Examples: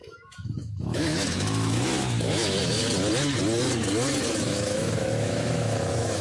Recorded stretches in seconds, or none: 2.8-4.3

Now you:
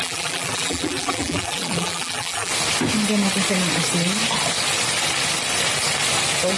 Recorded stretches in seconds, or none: 2.5-6.6

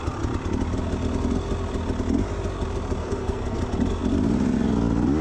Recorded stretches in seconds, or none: 0.0-3.0; 3.6-5.2

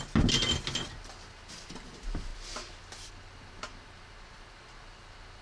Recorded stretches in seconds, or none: 0.0-5.4

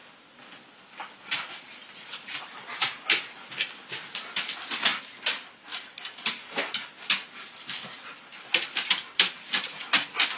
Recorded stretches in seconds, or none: 0.0-10.4

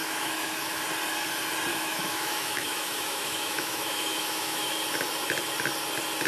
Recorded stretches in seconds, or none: 0.8-1.7; 4.7-6.3